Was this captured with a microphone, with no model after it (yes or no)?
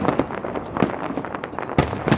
yes